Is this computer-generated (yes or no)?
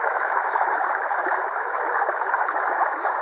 yes